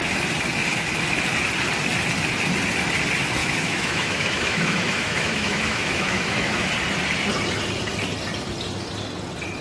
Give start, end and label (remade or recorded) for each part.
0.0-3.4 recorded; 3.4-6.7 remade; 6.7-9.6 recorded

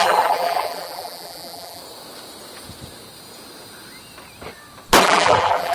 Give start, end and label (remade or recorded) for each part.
0.0-1.8 remade; 1.8-5.0 recorded; 5.0-5.7 remade

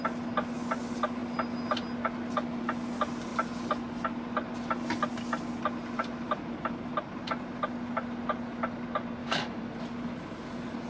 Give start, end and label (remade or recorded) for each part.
0.0-9.2 recorded; 9.2-9.7 remade; 9.7-10.9 recorded

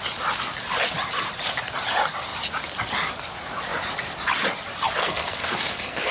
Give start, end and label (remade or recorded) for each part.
0.0-5.0 recorded; 5.0-6.1 remade

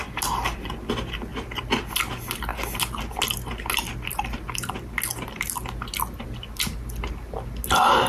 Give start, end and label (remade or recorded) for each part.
0.0-8.1 recorded

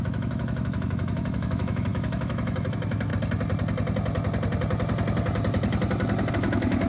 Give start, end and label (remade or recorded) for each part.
0.0-3.1 remade; 3.1-6.3 recorded; 6.3-6.9 remade